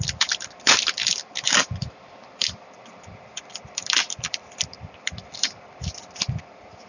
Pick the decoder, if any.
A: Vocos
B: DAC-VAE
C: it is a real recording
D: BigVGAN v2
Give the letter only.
D